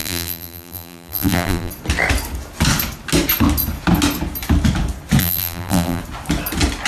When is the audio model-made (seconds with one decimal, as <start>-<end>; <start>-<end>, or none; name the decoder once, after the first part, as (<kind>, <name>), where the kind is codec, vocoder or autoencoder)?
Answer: 0.0-1.7 (vocoder, BigVGAN v2); 5.2-6.0